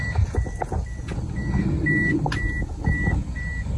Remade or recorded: recorded